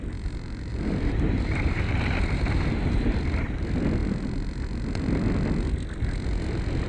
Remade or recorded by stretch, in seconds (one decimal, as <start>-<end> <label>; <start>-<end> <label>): 0.0-0.7 recorded; 0.7-3.1 remade; 3.1-6.9 recorded